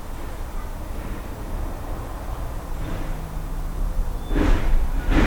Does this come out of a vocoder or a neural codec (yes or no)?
no